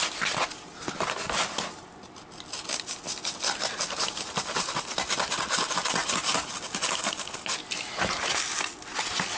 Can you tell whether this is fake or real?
real